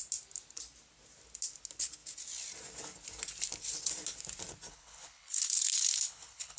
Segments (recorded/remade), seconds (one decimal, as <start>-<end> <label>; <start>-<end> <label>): 0.0-4.7 recorded; 4.7-6.6 remade